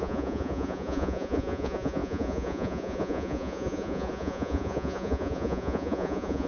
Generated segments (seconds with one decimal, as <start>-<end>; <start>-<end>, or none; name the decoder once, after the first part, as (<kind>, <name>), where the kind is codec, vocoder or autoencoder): 0.0-6.5 (vocoder, Vocos)